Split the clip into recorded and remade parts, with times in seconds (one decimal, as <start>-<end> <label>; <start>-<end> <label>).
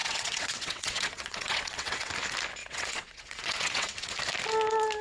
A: 0.0-2.1 remade; 2.1-2.6 recorded; 2.6-4.1 remade; 4.1-5.0 recorded